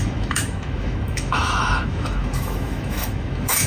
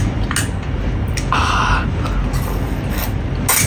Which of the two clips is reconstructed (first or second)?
first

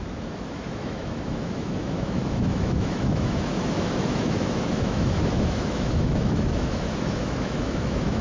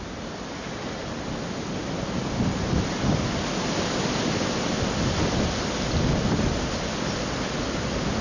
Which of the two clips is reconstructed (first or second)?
first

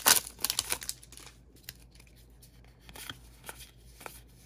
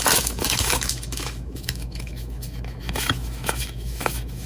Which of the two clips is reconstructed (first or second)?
second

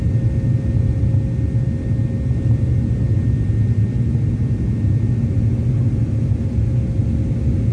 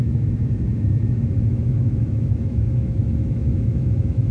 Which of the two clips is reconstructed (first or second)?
second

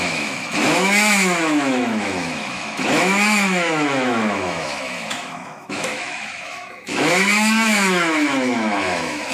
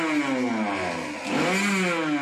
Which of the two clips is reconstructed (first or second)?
first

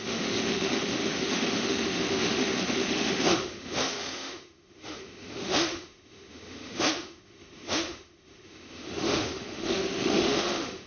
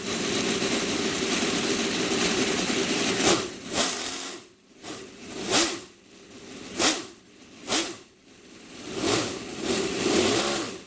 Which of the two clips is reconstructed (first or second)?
first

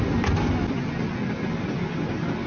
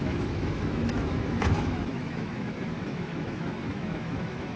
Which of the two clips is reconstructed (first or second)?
second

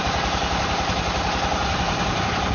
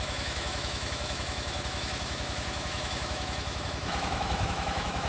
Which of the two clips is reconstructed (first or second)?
second